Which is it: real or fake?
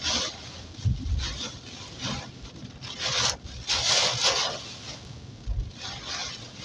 real